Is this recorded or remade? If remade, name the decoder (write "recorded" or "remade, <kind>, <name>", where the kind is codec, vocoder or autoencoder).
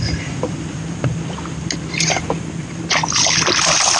remade, vocoder, BigVGAN v2